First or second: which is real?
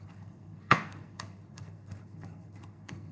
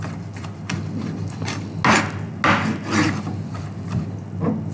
second